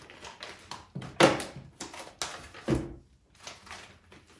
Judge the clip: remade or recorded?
recorded